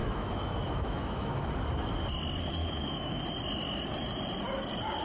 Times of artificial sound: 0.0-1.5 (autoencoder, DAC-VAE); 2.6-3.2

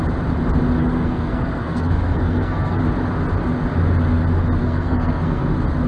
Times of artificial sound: 0.8-2.8 (codec, SNAC); 4.6-5.5

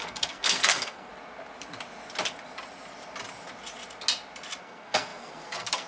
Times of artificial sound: 0.0-1.1 (codec, SNAC); 4.6-5.9

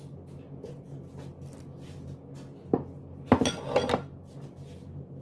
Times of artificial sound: none